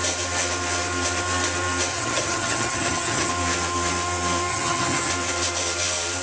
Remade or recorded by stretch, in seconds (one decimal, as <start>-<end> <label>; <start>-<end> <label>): 0.0-1.9 recorded; 1.9-3.3 remade; 3.3-4.5 recorded; 4.5-5.1 remade; 5.1-6.2 recorded